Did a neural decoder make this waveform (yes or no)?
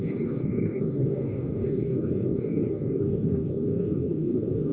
yes